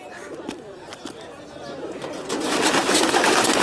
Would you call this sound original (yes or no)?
yes